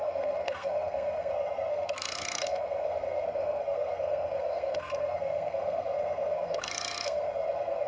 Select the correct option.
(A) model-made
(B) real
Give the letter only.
A